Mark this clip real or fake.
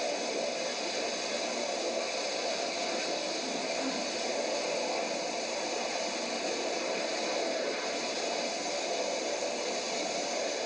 real